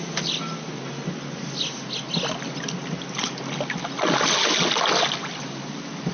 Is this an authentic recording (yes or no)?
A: yes